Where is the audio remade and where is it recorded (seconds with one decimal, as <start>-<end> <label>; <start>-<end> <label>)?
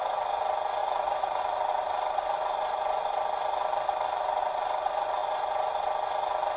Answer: 0.0-0.8 recorded; 0.8-1.4 remade; 1.4-6.6 recorded